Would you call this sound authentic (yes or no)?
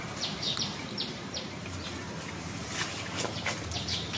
no